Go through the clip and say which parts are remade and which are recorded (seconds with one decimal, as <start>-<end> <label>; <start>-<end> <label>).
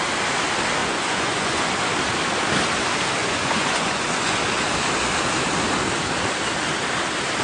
0.0-0.8 recorded; 0.8-1.7 remade; 1.7-3.2 recorded; 3.2-4.4 remade; 4.4-7.4 recorded